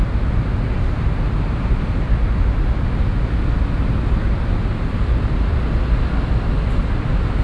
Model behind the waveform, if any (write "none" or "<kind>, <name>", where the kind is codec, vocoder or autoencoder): none